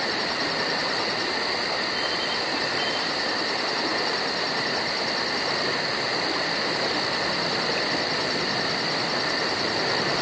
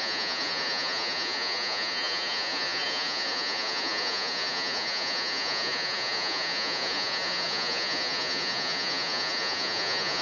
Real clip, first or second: first